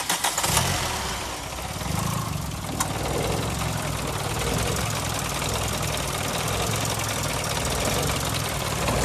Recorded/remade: recorded